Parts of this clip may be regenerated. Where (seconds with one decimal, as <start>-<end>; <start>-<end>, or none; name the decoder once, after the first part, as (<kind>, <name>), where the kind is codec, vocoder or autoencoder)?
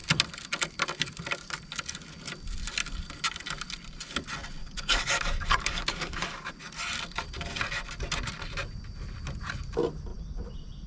4.6-6.5 (codec, DAC)